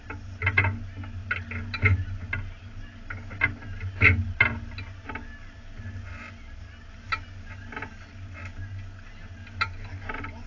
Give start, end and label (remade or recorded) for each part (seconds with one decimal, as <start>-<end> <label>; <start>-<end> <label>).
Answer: 0.0-10.5 recorded